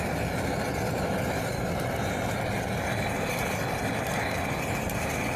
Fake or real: real